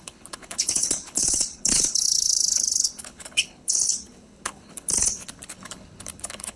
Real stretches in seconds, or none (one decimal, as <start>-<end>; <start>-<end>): none